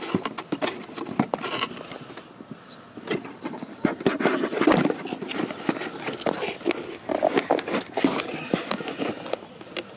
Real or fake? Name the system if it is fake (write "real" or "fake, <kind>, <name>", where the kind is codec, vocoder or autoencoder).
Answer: real